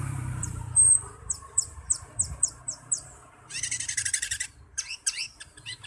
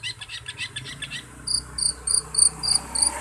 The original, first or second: second